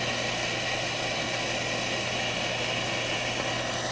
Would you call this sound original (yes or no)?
yes